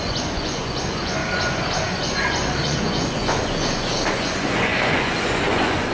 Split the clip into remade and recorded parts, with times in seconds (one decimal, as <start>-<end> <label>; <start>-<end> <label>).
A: 0.0-5.9 remade